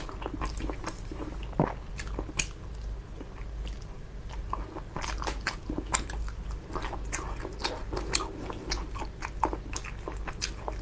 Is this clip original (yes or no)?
yes